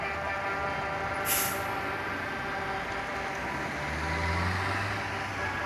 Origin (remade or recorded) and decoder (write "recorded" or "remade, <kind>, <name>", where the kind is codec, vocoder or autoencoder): recorded